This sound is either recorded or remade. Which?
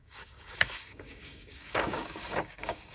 remade